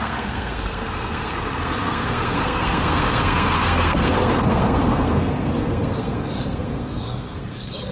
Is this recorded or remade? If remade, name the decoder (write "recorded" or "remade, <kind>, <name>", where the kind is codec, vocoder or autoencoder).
remade, codec, SNAC